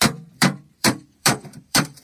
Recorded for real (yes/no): no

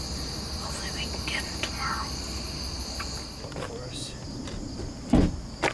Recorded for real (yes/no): yes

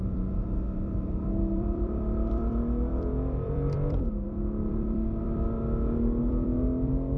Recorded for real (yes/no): no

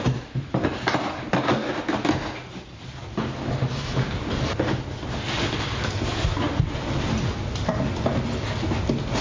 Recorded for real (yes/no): yes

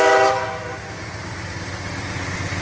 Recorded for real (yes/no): yes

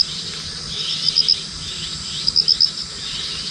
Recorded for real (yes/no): yes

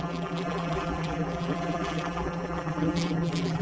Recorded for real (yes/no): no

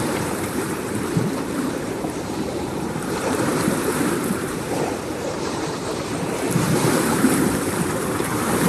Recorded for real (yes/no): no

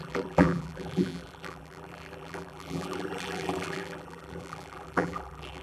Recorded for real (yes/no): no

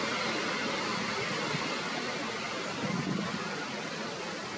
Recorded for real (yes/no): yes